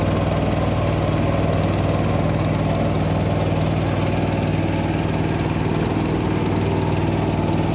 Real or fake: real